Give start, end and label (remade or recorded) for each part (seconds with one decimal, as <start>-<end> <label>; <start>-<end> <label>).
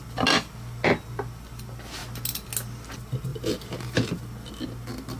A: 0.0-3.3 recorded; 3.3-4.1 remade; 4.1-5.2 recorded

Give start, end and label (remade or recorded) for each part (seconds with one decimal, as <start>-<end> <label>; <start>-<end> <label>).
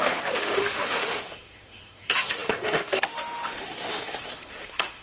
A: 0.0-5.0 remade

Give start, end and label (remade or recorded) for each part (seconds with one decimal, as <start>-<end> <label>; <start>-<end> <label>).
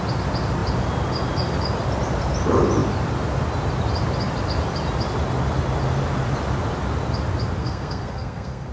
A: 0.0-7.6 recorded; 7.6-8.7 remade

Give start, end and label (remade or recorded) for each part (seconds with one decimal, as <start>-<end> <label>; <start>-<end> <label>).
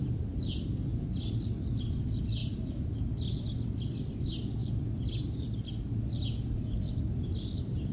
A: 0.0-7.9 recorded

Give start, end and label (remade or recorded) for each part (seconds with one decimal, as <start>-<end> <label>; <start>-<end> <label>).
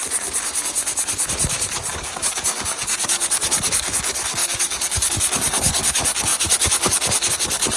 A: 0.0-1.9 recorded; 1.9-7.8 remade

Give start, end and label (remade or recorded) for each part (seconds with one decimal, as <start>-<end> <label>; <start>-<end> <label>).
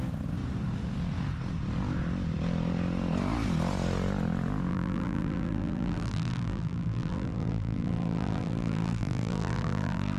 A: 0.0-4.7 recorded; 4.7-10.2 remade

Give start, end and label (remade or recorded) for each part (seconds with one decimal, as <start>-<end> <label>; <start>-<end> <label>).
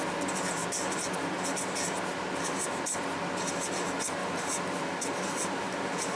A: 0.0-4.2 recorded; 4.2-6.2 remade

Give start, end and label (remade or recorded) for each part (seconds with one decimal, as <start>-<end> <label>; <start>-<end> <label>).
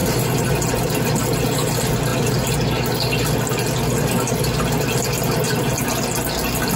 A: 0.0-0.5 remade; 0.5-6.8 recorded